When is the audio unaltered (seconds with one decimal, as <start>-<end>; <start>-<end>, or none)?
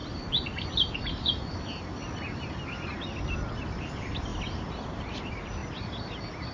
0.0-6.5